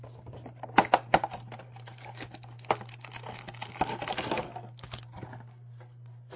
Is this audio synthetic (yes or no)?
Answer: no